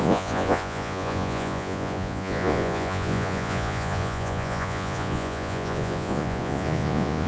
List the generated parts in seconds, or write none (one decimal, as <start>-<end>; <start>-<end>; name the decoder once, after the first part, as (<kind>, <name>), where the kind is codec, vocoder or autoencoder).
0.0-7.3 (vocoder, Vocos)